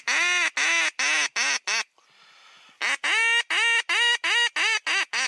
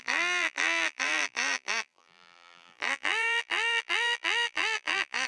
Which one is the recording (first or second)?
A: first